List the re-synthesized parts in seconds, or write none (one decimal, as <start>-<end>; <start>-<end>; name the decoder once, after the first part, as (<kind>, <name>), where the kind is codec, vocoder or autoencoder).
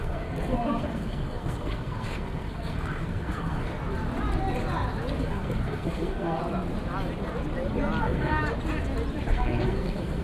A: 0.0-3.7 (codec, SNAC); 5.2-6.4; 8.0-8.4; 9.3-10.2